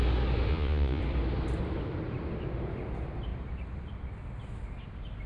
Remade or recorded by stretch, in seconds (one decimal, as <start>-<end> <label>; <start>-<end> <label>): 0.0-0.5 recorded; 0.5-1.0 remade; 1.0-5.3 recorded